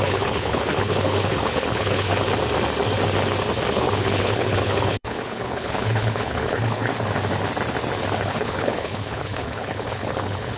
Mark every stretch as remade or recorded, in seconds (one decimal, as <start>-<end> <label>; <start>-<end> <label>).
0.0-2.1 remade; 2.1-3.7 recorded; 3.7-6.9 remade; 6.9-8.2 recorded; 8.2-10.6 remade